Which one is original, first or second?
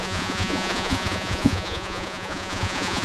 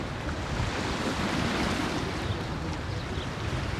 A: second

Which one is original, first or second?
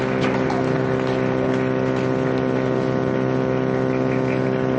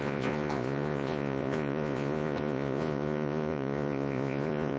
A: first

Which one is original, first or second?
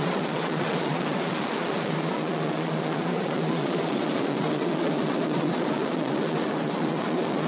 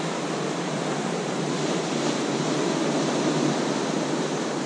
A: second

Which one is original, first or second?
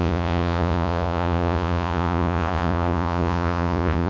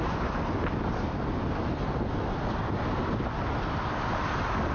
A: second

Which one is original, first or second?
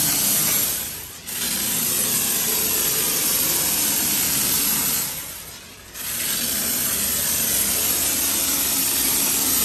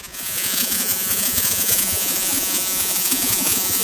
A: first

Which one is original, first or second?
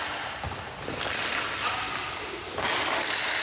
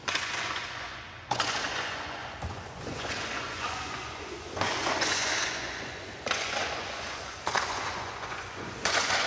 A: first